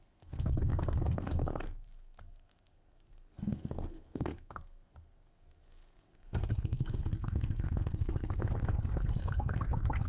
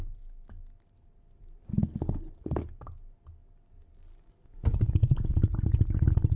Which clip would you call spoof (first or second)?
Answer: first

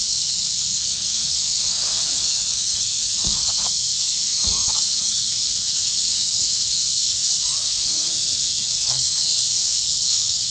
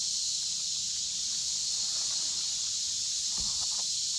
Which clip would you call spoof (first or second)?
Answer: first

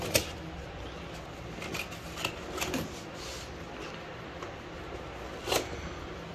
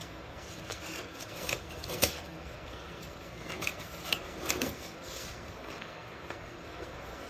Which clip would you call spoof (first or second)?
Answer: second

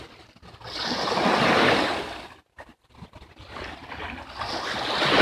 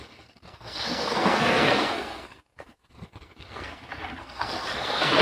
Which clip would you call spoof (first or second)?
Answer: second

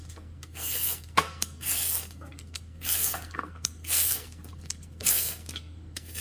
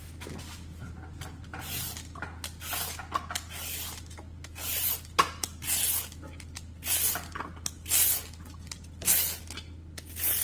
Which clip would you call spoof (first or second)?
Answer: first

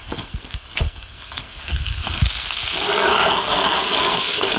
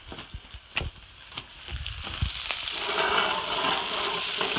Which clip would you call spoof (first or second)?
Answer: first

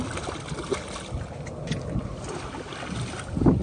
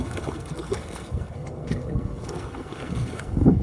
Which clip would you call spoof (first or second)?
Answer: second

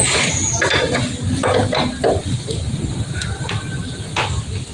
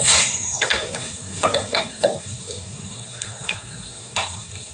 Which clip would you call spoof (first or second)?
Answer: second